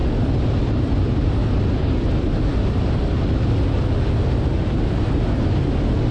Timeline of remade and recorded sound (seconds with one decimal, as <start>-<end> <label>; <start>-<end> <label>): 0.0-0.6 recorded; 0.6-1.4 remade; 1.4-5.1 recorded; 5.1-6.1 remade